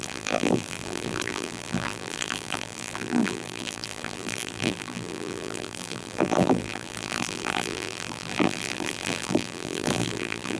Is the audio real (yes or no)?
no